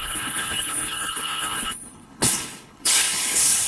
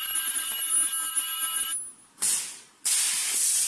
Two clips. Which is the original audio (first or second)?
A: second